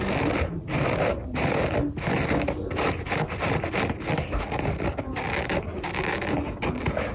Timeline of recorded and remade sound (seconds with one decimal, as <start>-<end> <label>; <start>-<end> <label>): 0.0-7.1 recorded